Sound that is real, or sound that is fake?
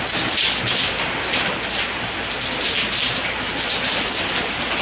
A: real